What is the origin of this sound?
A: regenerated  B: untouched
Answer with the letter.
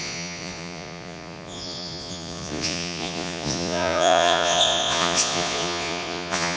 A